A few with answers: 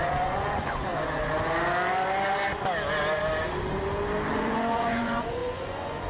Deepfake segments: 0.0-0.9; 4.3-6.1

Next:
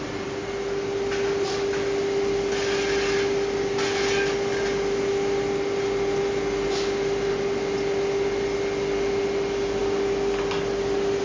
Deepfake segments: none